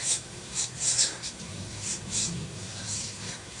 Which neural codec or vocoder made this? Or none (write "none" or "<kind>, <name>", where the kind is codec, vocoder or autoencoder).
codec, SNAC